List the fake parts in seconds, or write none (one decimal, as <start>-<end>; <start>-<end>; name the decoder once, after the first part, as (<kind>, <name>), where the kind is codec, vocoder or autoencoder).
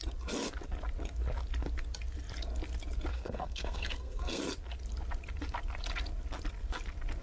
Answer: 3.1-4.4 (codec, SNAC)